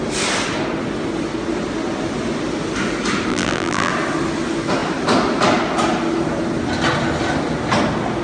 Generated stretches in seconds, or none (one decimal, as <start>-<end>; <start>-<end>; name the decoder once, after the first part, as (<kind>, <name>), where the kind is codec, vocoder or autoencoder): 3.3-3.9 (vocoder, BigVGAN v2)